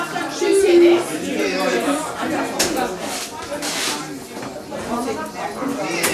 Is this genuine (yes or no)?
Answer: yes